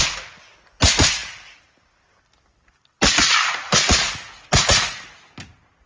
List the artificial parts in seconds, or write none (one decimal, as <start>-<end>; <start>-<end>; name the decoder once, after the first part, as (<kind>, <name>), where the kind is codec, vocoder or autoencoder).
none